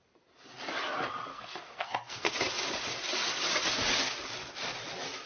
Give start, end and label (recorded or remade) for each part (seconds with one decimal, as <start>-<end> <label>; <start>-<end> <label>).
0.0-1.3 recorded; 1.3-2.3 remade; 2.3-5.3 recorded